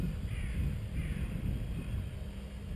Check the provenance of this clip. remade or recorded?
recorded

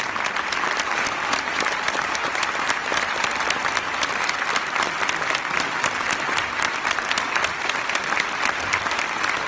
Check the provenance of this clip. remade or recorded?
remade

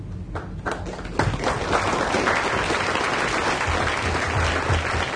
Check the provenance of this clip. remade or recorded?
recorded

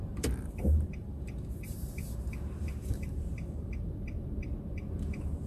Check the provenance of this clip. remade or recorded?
remade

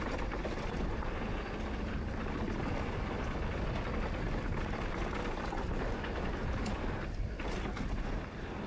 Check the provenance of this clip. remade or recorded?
recorded